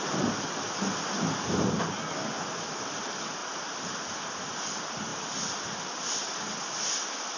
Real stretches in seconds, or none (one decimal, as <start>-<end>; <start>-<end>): 0.0-3.4; 4.1-5.1